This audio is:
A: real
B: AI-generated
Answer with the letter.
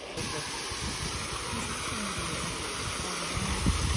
A